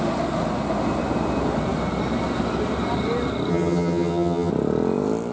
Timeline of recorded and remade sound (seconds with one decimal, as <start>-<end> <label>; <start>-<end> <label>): 0.0-3.5 recorded; 3.5-4.5 remade; 4.5-5.3 recorded